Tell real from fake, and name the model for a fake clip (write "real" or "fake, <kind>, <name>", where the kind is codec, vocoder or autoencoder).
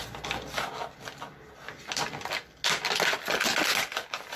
real